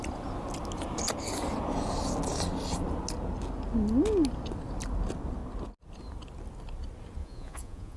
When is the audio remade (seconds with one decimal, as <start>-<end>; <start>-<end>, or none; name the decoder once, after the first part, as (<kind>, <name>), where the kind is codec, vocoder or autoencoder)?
7.2-8.0 (vocoder, Vocos)